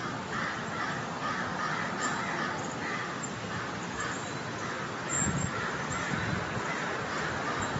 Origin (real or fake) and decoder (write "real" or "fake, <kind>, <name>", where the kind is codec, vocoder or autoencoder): fake, vocoder, BigVGAN v2